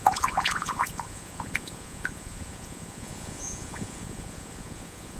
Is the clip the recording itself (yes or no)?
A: no